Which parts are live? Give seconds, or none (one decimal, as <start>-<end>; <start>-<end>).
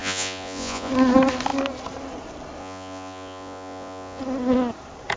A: 0.9-2.6; 4.2-5.2